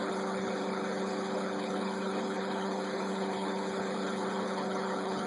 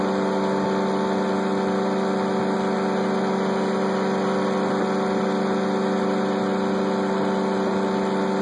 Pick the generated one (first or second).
first